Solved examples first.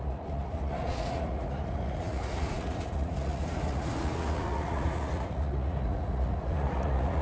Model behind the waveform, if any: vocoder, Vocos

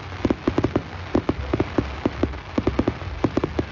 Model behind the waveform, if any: none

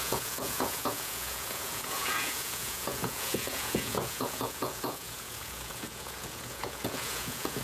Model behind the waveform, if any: vocoder, Vocos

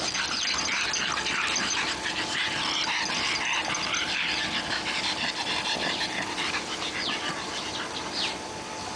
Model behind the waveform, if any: none